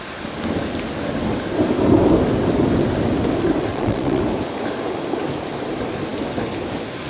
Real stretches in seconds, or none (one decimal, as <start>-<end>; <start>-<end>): 0.0-3.7; 4.2-7.1

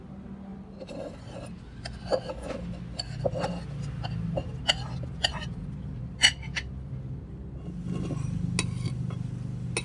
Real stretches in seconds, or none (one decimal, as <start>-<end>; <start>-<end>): 0.0-9.8

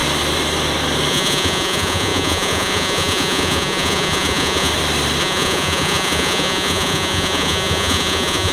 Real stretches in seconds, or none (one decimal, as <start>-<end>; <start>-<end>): 0.0-1.1; 4.7-5.2